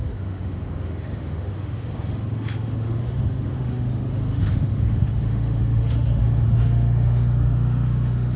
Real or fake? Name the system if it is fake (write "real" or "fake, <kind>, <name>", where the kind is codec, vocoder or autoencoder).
fake, autoencoder, DAC-VAE